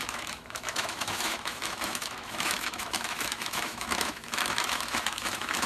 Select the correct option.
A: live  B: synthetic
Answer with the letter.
B